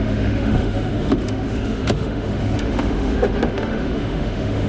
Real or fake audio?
fake